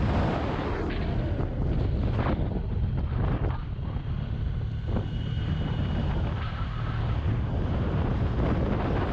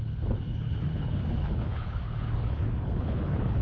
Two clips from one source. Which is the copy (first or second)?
second